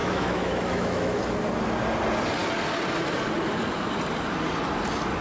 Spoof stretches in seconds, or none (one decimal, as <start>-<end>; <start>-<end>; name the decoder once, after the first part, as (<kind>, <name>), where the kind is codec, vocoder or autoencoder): 0.0-1.2 (autoencoder, DAC-VAE)